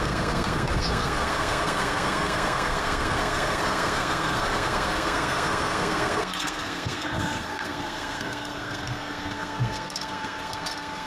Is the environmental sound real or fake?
fake